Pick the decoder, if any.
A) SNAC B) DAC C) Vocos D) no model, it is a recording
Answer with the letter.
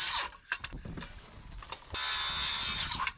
D